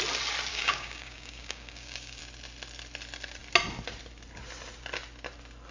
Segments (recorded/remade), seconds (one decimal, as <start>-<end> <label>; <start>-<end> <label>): 0.0-0.5 recorded; 0.5-2.2 remade; 2.2-5.7 recorded